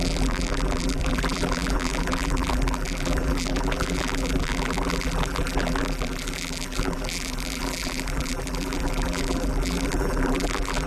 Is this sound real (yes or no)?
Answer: no